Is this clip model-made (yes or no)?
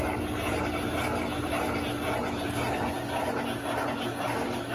no